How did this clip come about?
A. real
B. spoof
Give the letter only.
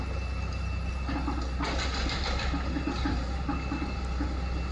A